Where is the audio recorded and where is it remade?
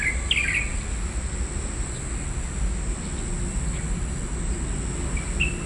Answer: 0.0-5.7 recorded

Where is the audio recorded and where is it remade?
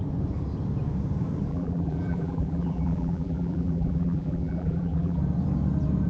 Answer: 0.0-1.5 recorded; 1.5-5.2 remade; 5.2-6.1 recorded